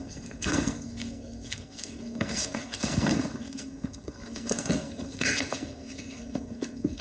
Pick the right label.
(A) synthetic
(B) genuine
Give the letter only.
A